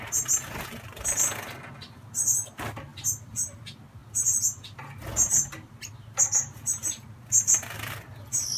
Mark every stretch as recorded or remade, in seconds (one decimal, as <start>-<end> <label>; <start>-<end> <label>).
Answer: 0.0-2.9 recorded; 2.9-3.6 remade; 3.6-8.6 recorded